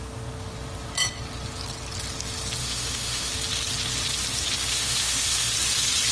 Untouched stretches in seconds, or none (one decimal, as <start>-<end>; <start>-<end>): 0.0-2.6; 3.3-4.7; 5.5-6.1